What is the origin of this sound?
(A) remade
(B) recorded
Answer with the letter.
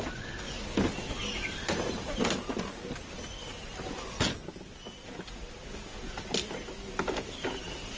B